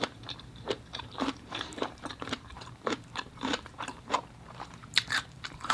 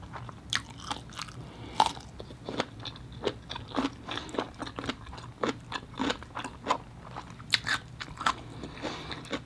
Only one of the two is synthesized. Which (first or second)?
first